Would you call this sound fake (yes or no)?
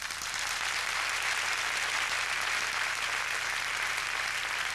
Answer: no